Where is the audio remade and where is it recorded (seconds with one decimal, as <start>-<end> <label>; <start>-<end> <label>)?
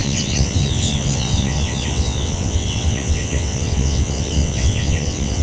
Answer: 0.0-5.4 remade